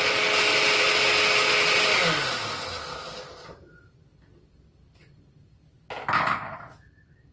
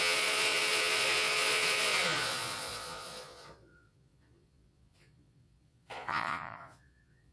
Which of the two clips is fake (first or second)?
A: second